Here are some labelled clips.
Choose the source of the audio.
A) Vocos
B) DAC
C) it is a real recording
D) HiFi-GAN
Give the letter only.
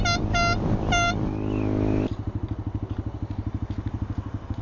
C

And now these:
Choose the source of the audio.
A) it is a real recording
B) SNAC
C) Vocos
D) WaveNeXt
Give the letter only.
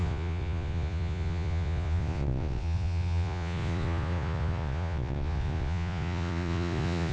C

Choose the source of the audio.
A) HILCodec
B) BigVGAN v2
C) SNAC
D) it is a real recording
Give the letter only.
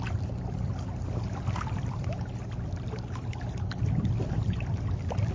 D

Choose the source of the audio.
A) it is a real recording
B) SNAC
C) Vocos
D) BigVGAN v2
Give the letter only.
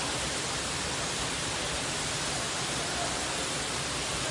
A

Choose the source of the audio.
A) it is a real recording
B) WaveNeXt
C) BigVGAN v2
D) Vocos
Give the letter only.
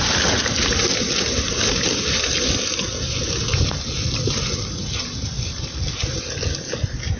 A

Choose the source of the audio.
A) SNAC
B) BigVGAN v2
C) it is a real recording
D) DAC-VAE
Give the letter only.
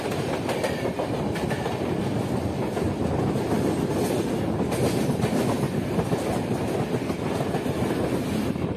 C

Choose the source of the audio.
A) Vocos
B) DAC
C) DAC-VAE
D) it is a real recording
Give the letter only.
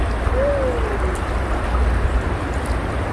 D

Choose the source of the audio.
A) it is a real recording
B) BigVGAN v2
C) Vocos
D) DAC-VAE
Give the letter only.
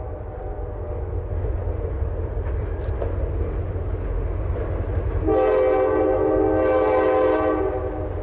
A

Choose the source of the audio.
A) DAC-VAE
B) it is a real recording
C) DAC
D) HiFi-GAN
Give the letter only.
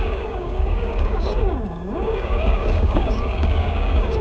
C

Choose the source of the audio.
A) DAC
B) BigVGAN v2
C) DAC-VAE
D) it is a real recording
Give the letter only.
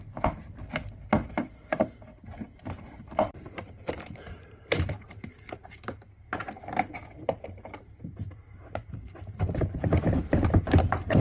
B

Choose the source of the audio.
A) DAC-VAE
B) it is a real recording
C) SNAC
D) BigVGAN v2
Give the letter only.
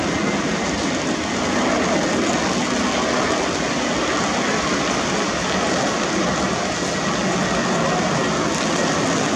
B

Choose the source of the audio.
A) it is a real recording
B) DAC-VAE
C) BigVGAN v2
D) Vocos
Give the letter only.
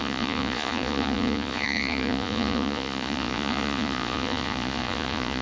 D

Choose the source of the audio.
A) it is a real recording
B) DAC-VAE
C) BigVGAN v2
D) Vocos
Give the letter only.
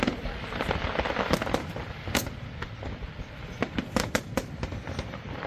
C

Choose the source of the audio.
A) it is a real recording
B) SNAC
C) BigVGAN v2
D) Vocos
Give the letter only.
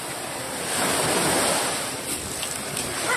C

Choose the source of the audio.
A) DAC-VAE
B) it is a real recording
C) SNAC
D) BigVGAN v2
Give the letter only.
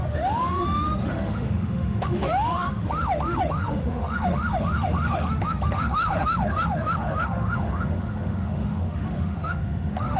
A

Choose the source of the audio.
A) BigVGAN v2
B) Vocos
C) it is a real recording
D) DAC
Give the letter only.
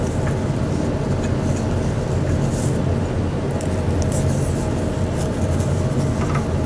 C